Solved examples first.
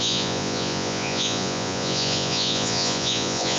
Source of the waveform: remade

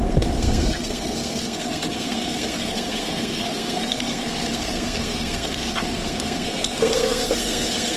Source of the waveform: remade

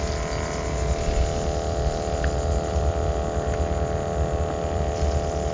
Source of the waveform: recorded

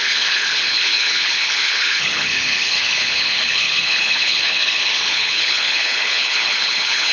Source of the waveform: remade